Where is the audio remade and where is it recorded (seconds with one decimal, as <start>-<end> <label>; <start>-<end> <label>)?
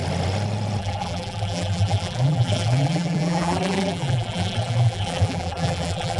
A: 0.0-0.8 recorded; 0.8-6.2 remade